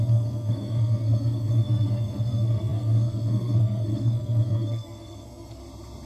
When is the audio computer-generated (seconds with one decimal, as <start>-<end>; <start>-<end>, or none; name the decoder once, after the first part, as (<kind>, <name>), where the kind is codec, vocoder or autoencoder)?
0.0-5.6 (codec, SNAC)